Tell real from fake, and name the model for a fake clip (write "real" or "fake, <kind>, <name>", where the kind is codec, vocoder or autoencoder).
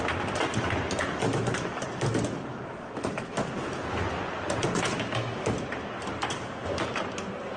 real